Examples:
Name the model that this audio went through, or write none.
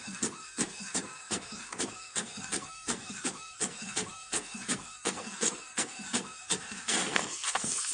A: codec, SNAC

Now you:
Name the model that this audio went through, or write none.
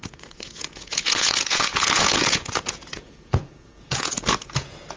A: vocoder, Vocos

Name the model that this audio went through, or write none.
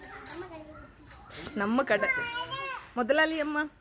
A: none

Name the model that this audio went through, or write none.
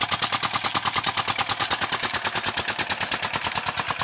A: none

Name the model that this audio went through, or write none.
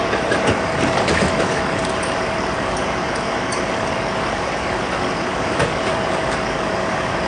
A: codec, DAC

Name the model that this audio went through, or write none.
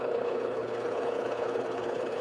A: codec, HILCodec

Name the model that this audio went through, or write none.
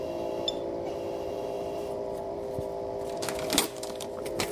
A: none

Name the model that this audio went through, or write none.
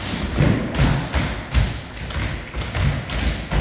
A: none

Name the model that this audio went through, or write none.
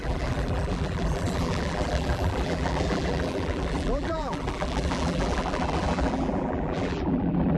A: vocoder, BigVGAN v2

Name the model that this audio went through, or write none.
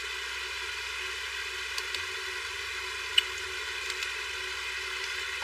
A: none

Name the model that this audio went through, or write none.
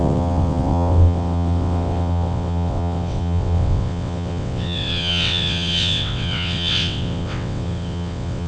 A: vocoder, WaveNeXt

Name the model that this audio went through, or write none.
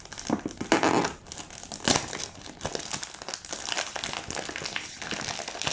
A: none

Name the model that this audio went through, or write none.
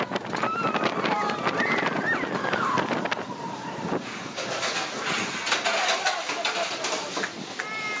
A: none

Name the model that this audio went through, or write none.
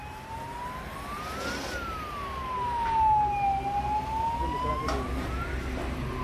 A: none